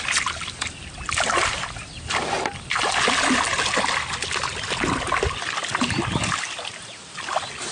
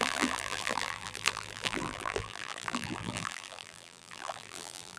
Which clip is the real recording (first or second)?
first